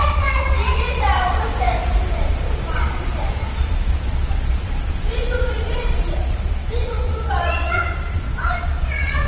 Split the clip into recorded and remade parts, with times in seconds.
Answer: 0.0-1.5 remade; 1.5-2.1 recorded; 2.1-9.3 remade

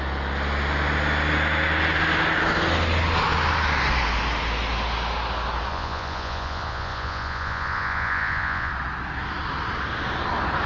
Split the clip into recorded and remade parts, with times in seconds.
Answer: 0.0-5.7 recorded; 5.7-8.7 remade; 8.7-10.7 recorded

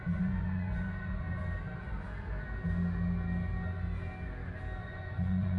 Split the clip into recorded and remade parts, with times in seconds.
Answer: 0.0-1.4 remade; 1.4-4.8 recorded; 4.8-5.6 remade